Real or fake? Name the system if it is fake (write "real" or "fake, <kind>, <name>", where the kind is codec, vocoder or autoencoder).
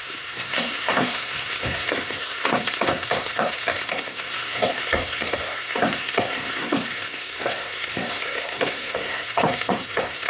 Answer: fake, codec, SNAC